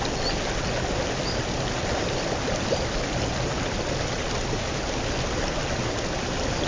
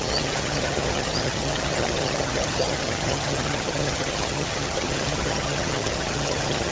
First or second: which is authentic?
first